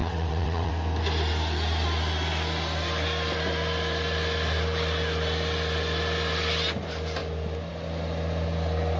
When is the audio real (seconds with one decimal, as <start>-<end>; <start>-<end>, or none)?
0.7-9.0